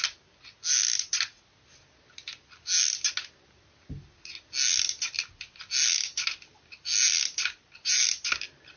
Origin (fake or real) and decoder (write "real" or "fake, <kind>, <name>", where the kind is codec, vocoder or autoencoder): real